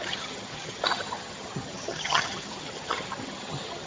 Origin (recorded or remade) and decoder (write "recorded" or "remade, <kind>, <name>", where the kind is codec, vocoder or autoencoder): remade, vocoder, HiFi-GAN